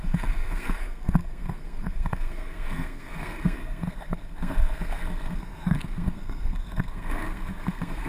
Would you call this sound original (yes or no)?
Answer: no